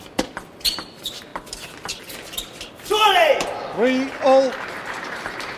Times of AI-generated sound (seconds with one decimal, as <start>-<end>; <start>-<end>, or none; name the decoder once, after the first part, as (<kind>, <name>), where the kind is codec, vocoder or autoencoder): 0.0-1.3 (vocoder, BigVGAN v2); 4.7-5.6